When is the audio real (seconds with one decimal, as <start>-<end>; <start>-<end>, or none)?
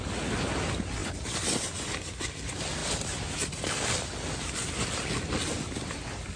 0.0-6.4